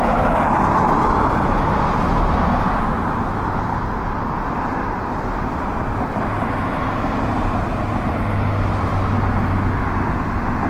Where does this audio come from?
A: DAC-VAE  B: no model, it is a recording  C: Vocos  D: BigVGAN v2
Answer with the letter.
B